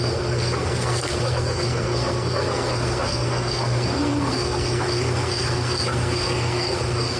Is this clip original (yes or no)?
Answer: no